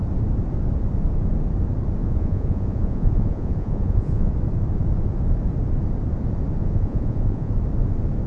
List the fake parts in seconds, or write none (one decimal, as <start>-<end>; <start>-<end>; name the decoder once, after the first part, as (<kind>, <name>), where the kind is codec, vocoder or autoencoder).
2.0-4.3 (vocoder, Vocos); 6.6-7.5